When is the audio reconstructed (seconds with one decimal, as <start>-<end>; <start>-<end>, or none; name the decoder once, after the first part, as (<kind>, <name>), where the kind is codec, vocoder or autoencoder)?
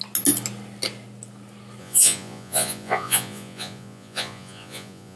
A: 1.8-5.2 (vocoder, Vocos)